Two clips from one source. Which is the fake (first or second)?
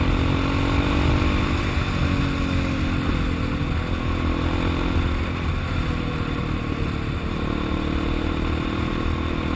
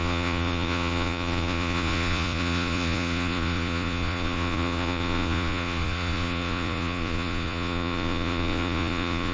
second